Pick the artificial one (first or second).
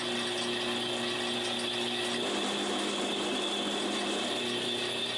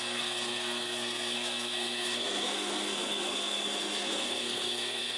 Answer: second